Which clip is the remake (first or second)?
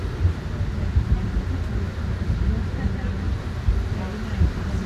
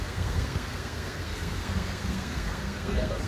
second